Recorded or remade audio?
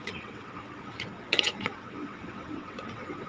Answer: remade